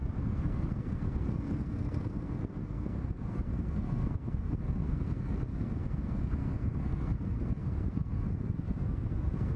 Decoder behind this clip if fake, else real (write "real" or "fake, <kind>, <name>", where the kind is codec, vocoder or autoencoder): fake, codec, SNAC